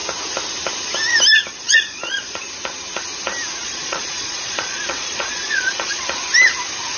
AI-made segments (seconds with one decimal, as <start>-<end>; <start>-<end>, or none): 1.6-2.4; 3.6-6.0